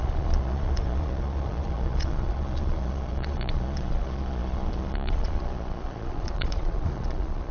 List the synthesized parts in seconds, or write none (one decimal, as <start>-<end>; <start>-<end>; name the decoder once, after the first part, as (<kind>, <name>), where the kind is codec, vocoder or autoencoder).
0.0-7.5 (vocoder, Vocos)